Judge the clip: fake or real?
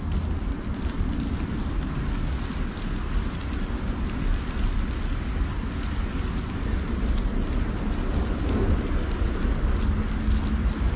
real